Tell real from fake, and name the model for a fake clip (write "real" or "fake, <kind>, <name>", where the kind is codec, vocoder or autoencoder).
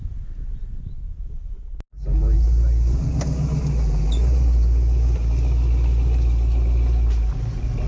real